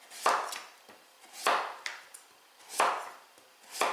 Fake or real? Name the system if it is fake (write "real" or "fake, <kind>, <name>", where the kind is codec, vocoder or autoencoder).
real